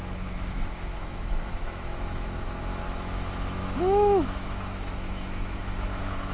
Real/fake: fake